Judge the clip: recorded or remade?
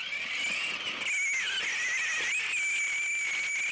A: recorded